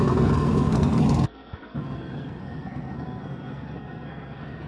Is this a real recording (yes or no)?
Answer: no